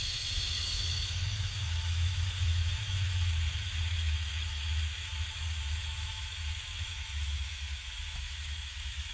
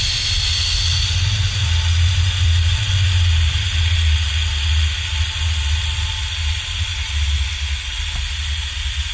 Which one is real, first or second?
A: second